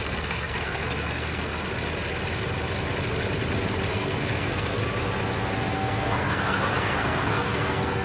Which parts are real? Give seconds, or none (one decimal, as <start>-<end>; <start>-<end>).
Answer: 1.5-3.9; 4.8-5.7